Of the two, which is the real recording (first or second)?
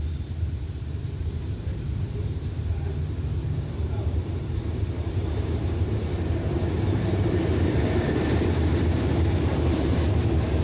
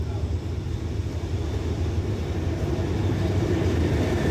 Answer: second